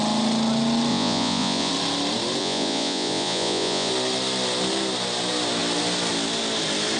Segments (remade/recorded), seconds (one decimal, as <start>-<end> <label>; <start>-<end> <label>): 0.0-0.9 recorded; 0.9-1.7 remade; 1.7-2.4 recorded; 2.4-3.9 remade; 3.9-7.0 recorded